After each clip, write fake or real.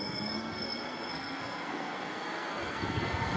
fake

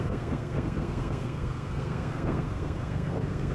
fake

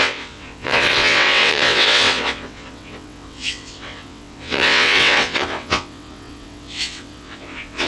fake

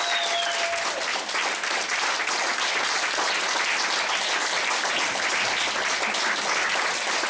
real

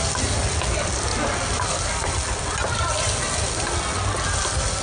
real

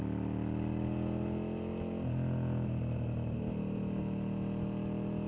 real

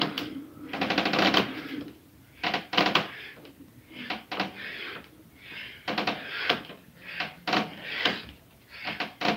real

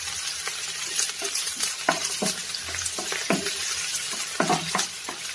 real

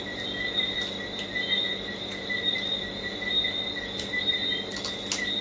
real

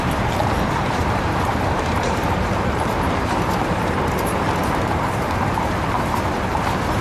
fake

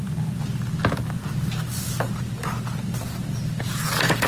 real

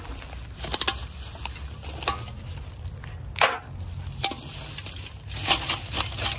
real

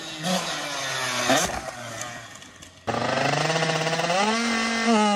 real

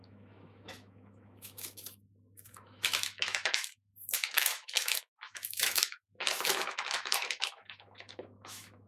fake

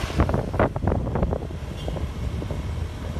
real